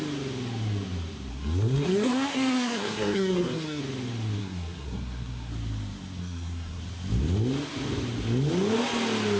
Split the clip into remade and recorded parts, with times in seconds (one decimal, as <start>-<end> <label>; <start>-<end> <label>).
0.0-1.3 recorded; 1.3-3.8 remade; 3.8-4.4 recorded; 4.4-5.5 remade; 5.5-6.2 recorded; 6.2-6.8 remade; 6.8-9.4 recorded